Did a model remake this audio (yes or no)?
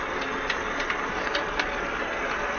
no